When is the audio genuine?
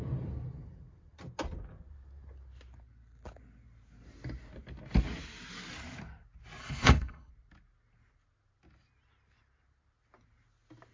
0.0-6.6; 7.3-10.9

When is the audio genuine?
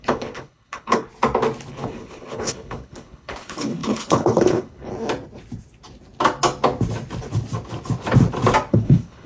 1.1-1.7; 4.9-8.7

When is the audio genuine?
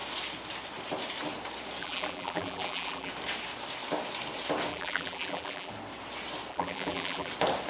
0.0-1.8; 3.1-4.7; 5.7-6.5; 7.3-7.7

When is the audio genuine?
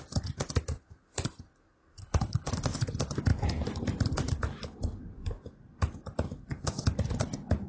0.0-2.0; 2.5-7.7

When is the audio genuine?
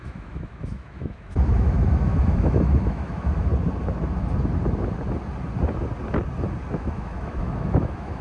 3.5-6.7